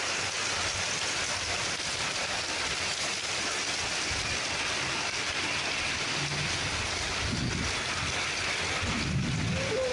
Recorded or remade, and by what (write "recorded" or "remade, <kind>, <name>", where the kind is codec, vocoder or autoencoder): recorded